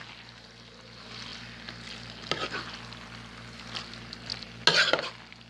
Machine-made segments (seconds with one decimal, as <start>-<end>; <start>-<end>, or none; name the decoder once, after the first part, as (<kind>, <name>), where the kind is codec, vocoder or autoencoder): none